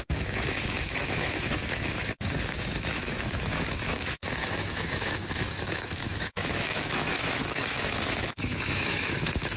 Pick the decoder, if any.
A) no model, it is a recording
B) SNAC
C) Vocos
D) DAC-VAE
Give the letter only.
D